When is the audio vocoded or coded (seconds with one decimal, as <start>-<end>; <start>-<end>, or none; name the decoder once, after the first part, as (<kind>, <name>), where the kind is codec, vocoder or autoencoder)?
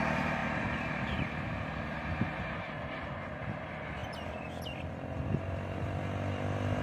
none